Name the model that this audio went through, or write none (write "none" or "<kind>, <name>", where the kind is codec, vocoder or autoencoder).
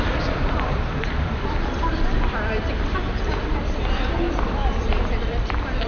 vocoder, BigVGAN v2